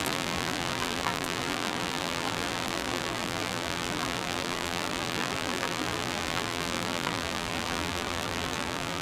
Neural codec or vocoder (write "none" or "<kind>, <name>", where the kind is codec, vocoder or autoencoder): vocoder, BigVGAN v2